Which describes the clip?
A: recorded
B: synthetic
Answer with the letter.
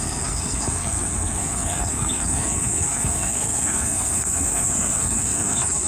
B